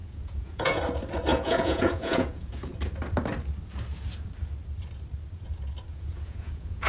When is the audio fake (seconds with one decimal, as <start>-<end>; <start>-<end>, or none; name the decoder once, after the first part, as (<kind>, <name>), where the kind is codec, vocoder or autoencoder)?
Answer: 0.0-0.8 (vocoder, Vocos); 1.3-2.5; 5.9-6.9